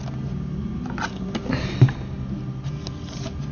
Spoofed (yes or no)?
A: no